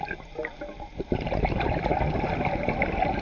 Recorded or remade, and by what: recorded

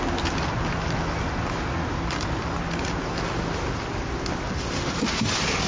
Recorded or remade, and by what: recorded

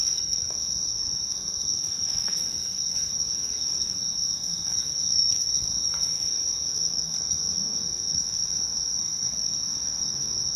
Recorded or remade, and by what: remade, codec, SNAC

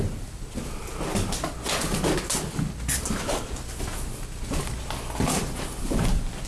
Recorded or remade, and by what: recorded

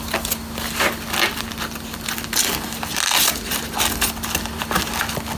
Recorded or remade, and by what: recorded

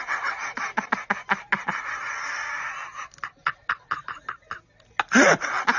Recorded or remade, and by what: recorded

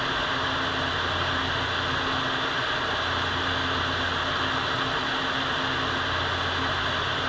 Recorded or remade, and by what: recorded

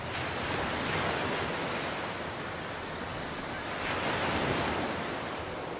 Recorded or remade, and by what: recorded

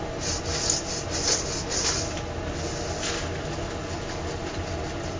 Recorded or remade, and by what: recorded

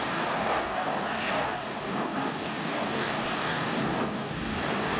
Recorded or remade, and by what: remade, codec, DAC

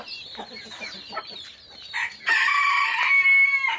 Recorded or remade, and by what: remade, vocoder, BigVGAN v2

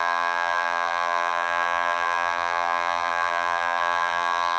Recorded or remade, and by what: remade, vocoder, BigVGAN v2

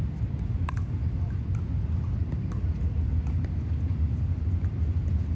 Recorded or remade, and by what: recorded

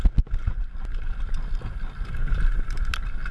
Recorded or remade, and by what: recorded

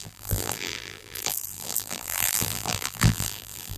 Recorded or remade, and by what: remade, vocoder, BigVGAN v2